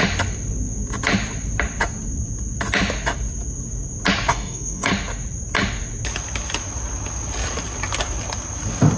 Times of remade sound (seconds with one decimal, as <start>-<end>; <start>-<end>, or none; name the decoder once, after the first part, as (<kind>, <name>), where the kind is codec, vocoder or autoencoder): 4.3-4.9 (codec, DAC)